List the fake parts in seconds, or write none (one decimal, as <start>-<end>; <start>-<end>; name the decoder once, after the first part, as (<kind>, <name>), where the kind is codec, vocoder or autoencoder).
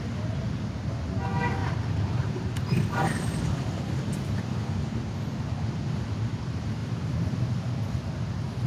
1.6-4.9 (vocoder, BigVGAN v2); 6.8-7.3